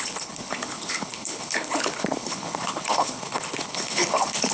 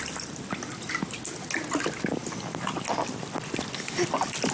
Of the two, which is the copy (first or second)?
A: first